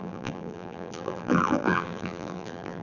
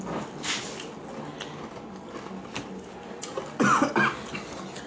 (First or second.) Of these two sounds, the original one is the second